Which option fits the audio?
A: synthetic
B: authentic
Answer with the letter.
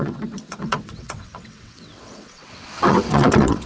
A